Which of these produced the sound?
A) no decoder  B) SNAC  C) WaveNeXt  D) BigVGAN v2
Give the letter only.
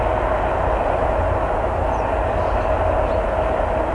A